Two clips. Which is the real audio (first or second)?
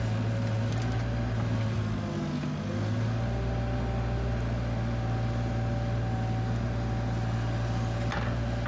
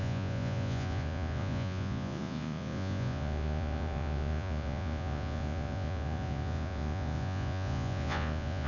first